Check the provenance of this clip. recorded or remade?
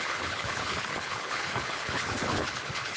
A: remade